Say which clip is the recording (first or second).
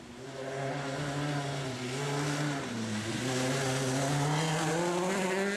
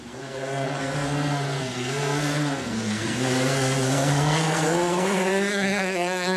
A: first